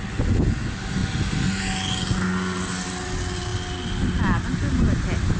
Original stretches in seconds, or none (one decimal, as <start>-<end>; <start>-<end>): 0.0-5.4